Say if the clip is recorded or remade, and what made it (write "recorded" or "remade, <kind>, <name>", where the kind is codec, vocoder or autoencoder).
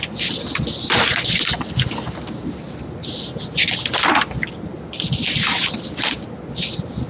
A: recorded